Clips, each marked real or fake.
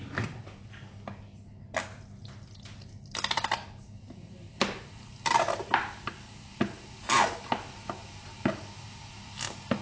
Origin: real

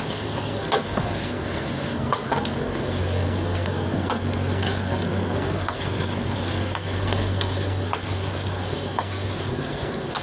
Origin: fake